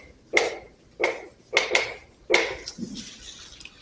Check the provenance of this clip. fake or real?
real